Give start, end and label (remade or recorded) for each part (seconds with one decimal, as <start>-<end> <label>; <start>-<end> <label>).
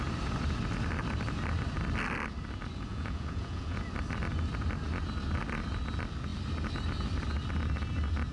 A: 0.0-2.9 recorded; 2.9-3.9 remade; 3.9-8.3 recorded